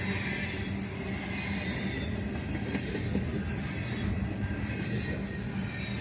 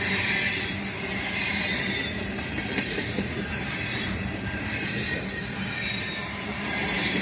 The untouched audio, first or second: first